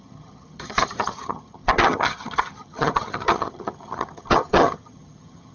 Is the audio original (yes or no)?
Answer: no